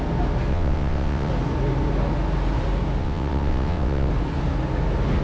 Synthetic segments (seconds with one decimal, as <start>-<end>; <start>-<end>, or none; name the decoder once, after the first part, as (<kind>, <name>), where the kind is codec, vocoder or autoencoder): 0.5-1.3 (vocoder, WaveNeXt); 3.0-4.1